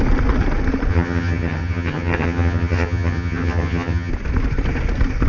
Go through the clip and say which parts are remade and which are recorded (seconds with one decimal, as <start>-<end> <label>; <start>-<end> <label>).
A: 0.0-0.9 recorded; 0.9-4.1 remade; 4.1-5.3 recorded